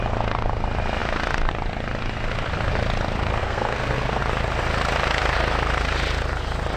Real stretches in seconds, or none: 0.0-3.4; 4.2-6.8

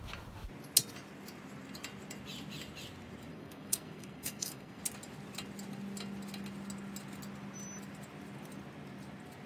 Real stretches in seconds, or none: 0.0-3.3; 4.8-9.5

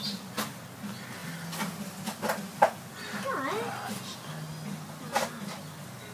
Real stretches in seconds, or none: 0.0-6.1

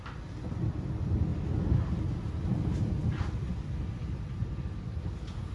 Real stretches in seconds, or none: 0.0-5.5

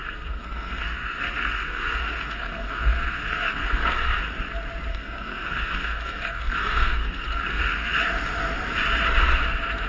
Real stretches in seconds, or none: 4.2-4.9; 7.9-9.9

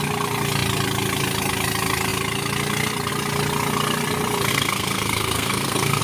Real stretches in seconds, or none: 0.0-4.5

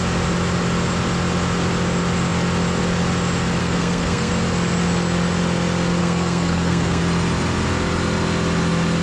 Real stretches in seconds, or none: 0.0-3.6; 4.3-6.0; 7.0-9.0

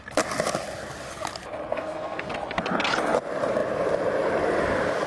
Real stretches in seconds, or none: 0.0-1.7; 2.3-5.1